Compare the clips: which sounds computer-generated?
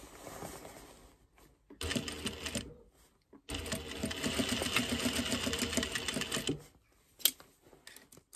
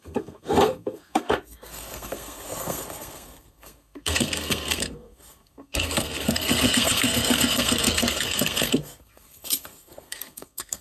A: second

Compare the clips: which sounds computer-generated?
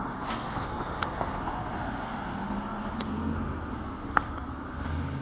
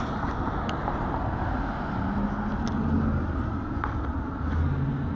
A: first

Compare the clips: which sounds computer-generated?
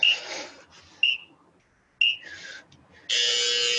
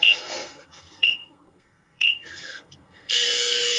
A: second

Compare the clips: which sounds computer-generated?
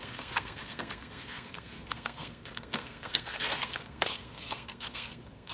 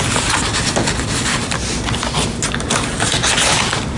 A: first